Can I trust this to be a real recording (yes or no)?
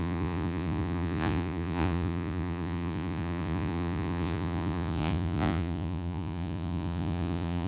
no